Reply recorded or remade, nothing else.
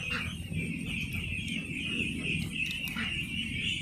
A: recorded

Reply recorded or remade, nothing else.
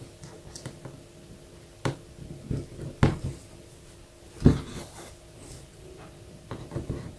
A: recorded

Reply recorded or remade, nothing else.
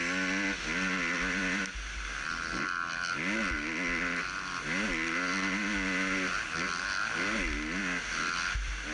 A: recorded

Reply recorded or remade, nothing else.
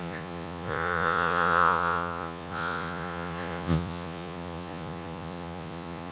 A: remade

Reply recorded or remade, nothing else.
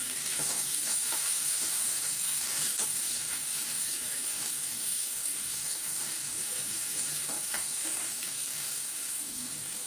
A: remade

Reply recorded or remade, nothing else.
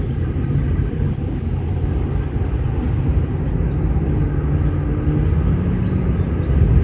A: recorded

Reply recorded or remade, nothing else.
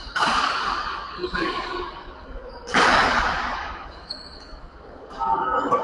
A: remade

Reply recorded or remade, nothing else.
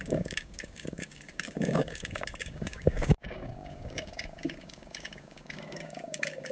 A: remade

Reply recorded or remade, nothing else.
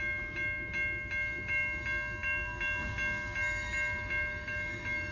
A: recorded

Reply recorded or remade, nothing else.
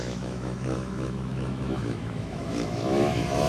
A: remade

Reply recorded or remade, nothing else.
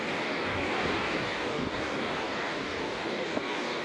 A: remade